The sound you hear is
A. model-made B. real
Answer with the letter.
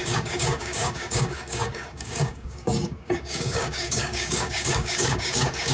A